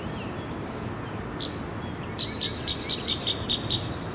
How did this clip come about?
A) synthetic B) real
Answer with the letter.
B